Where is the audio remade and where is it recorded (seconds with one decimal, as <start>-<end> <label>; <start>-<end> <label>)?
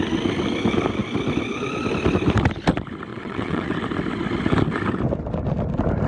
0.0-3.1 recorded; 3.1-3.7 remade; 3.7-6.1 recorded